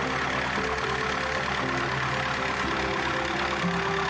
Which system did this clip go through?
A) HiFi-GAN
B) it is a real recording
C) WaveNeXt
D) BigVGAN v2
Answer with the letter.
B